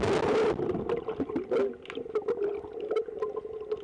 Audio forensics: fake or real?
real